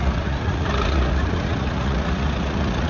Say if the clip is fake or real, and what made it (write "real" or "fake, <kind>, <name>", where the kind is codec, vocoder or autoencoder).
fake, vocoder, Vocos